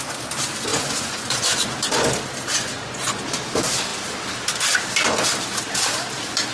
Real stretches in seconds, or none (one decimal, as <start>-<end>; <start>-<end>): 0.0-0.7; 2.0-2.5; 3.2-6.5